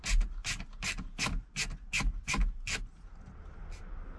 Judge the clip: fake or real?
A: real